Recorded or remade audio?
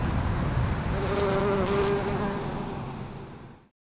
recorded